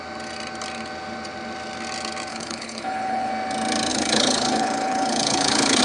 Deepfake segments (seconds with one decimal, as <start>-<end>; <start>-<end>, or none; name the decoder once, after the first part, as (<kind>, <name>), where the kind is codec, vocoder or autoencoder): 2.3-3.3 (codec, HILCodec); 3.9-5.8